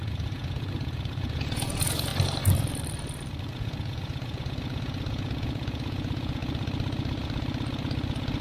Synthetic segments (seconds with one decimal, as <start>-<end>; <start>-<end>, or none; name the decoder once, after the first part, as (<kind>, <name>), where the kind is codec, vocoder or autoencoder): 0.0-2.1 (vocoder, Vocos); 3.4-6.4